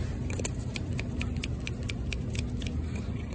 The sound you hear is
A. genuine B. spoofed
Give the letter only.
A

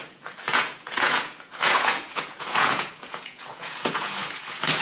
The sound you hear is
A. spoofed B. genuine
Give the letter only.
A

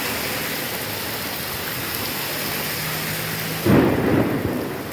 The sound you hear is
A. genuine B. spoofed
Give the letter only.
A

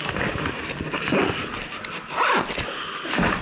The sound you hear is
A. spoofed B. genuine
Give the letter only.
B